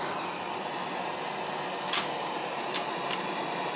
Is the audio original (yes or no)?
yes